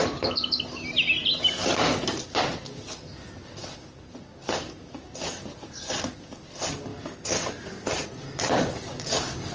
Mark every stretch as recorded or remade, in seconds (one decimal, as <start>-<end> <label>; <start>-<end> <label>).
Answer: 0.0-9.5 recorded